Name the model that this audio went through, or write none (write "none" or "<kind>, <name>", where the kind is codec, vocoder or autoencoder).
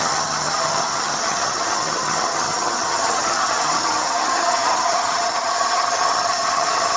vocoder, HiFi-GAN